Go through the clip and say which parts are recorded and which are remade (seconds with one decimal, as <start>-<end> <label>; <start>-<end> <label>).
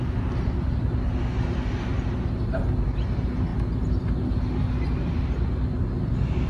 0.0-6.5 recorded